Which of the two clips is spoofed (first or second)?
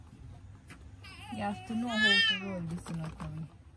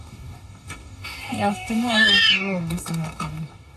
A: second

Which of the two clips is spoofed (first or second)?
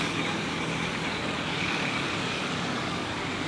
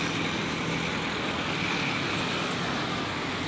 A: first